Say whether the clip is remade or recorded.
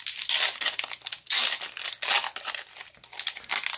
recorded